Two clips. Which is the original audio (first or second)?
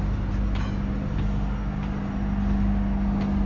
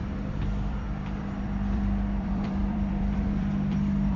first